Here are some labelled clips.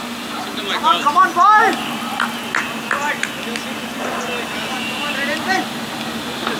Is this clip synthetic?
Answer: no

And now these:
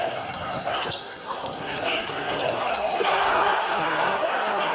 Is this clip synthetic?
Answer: yes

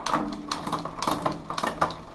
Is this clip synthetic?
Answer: no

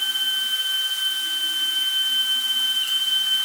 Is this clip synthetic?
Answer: no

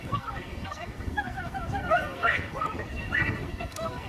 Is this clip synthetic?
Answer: yes